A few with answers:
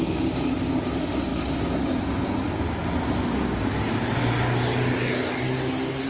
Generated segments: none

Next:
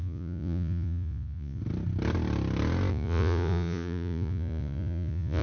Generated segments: 0.0-1.6; 2.9-5.4

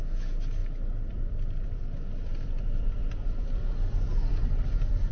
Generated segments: 0.6-1.8; 2.3-5.1

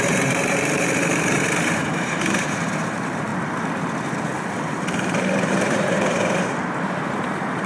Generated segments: 0.0-3.3; 4.4-7.7

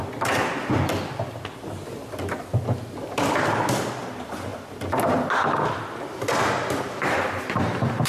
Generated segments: none